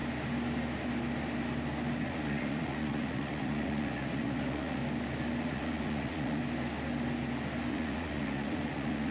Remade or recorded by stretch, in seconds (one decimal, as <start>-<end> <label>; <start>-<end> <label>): 0.0-2.0 recorded; 2.0-4.8 remade; 4.8-5.4 recorded; 5.4-6.4 remade; 6.4-7.7 recorded; 7.7-9.1 remade